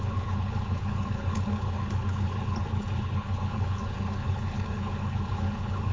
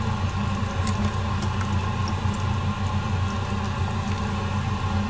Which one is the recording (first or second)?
second